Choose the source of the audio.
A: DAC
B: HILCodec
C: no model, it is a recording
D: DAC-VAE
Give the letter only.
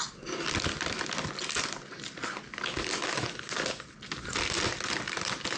C